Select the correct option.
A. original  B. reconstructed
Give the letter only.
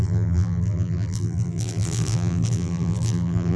B